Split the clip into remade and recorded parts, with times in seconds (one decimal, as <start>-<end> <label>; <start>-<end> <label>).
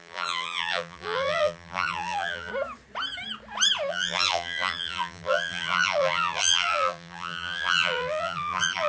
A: 0.0-2.5 remade; 2.5-3.9 recorded; 3.9-8.9 remade